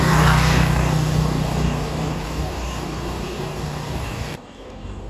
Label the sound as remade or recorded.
remade